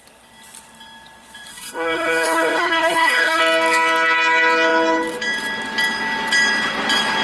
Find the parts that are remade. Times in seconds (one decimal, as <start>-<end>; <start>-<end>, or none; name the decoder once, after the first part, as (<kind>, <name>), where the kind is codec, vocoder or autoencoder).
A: 1.5-3.4 (codec, SNAC)